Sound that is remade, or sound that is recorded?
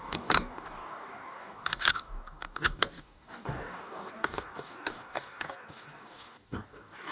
remade